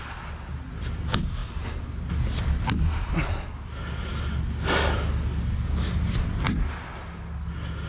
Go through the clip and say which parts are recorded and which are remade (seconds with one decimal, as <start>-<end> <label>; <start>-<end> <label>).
0.0-7.9 recorded